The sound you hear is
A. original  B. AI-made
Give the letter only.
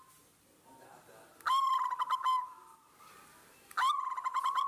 A